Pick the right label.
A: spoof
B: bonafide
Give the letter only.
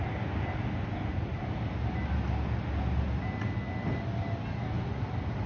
B